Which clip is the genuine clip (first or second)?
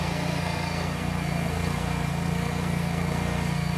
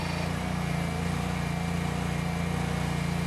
second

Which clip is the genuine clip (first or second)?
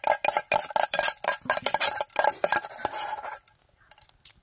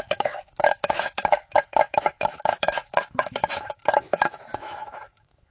first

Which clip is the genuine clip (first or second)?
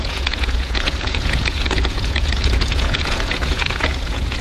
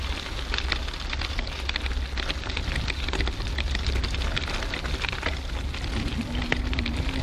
second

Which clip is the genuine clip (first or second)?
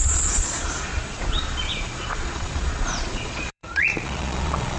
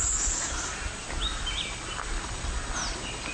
second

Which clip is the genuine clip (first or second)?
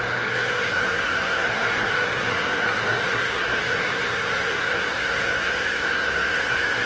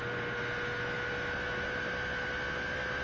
second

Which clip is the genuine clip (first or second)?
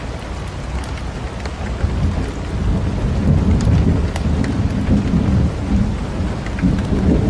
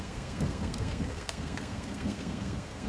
first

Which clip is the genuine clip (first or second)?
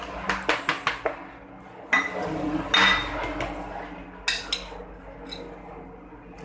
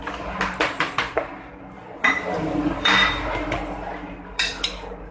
first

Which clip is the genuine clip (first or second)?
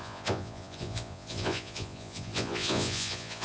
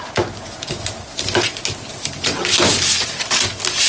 second